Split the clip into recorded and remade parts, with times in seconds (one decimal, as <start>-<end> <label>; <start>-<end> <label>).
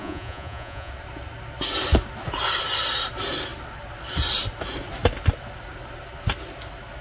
0.0-0.9 remade; 0.9-7.0 recorded